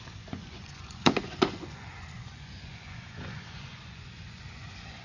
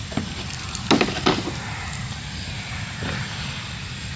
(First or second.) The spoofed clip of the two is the first